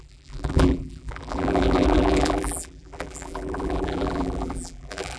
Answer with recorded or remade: remade